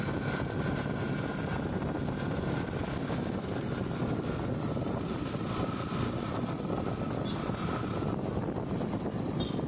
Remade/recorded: recorded